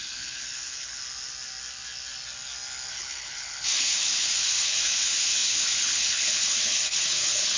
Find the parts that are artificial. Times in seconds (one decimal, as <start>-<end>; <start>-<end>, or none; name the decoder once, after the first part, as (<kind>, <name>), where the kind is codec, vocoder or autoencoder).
0.0-1.0 (codec, HILCodec); 2.9-7.6